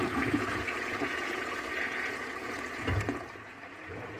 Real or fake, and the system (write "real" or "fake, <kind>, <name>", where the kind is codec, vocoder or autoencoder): fake, vocoder, Vocos